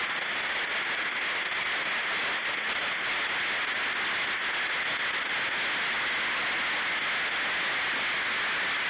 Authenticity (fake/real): real